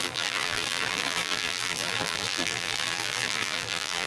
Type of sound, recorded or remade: remade